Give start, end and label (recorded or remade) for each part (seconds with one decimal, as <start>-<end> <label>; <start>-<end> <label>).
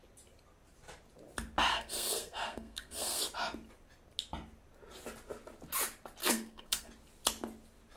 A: 0.0-1.7 recorded; 1.7-3.2 remade; 3.2-6.2 recorded; 6.2-6.9 remade; 6.9-8.0 recorded